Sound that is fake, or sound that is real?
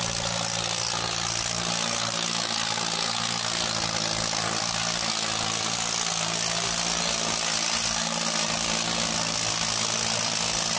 real